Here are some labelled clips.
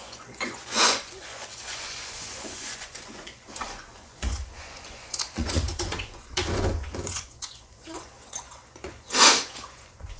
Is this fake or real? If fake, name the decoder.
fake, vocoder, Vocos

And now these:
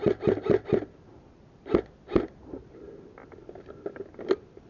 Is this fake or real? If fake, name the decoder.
real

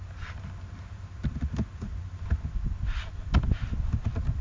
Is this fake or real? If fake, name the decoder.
real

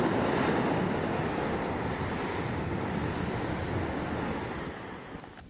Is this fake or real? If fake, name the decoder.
real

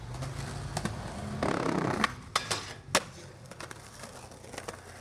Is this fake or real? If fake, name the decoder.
real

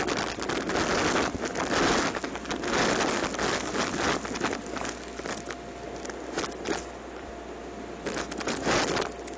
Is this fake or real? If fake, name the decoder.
real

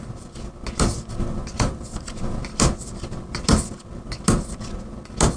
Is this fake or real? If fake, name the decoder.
real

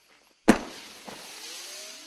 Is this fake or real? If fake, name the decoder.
fake, vocoder, BigVGAN v2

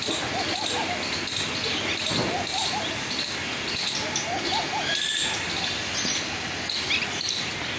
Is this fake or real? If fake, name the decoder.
real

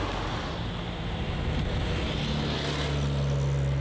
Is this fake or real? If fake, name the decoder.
real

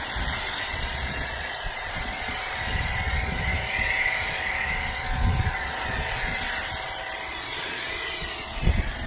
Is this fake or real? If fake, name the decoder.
fake, vocoder, Vocos